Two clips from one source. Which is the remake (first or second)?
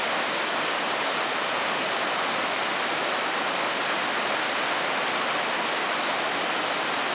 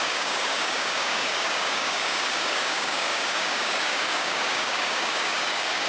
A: second